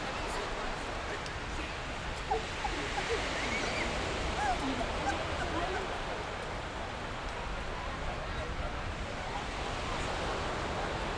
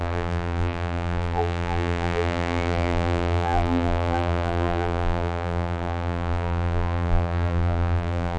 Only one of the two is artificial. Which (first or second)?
second